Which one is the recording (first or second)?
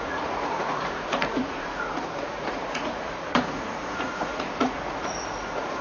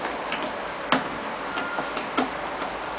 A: second